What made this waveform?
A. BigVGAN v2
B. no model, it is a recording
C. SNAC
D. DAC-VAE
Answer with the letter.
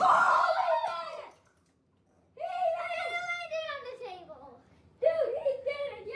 A